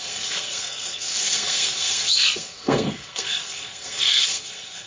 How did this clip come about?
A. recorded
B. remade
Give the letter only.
B